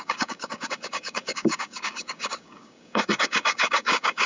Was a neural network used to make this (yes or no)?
yes